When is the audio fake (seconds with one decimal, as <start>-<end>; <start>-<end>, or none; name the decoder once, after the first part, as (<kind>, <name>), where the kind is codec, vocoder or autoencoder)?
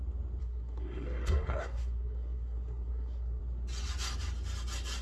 0.4-3.4 (codec, SNAC)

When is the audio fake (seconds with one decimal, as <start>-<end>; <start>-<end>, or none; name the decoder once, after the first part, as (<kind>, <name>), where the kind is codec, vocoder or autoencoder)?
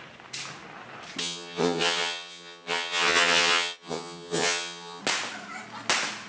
1.2-5.0 (vocoder, HiFi-GAN)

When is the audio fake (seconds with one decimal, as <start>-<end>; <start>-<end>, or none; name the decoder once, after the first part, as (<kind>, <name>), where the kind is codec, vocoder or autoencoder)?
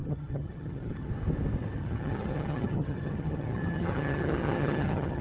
0.0-1.1 (vocoder, HiFi-GAN); 1.8-5.2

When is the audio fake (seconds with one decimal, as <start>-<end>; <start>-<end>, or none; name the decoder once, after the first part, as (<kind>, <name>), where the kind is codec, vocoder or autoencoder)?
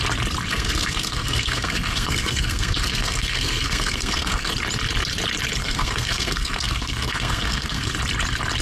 0.5-4.5 (codec, SNAC); 5.6-7.9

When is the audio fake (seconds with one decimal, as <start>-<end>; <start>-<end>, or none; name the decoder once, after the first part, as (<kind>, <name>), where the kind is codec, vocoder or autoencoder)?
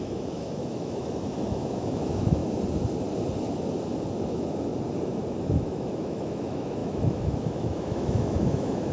0.0-2.4 (autoencoder, DAC-VAE); 4.3-4.7; 5.4-8.9